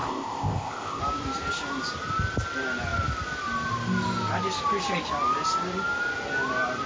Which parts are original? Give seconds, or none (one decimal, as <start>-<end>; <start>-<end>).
1.0-6.9